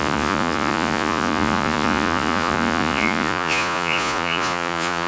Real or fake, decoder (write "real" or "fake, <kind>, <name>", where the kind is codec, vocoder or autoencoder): fake, vocoder, Vocos